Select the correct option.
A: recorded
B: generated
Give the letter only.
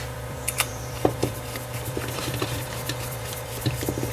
B